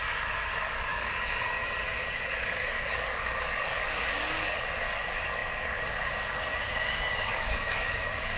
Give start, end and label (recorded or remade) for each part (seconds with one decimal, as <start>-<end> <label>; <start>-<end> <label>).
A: 0.0-8.4 remade